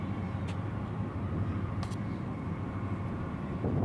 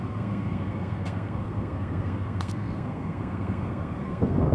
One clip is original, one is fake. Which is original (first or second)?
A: first